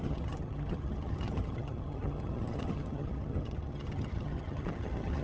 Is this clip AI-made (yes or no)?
yes